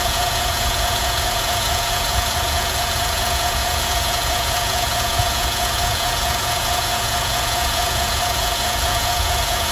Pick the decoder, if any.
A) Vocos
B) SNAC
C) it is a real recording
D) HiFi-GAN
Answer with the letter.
A